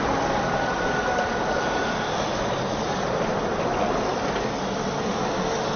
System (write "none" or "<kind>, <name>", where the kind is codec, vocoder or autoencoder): none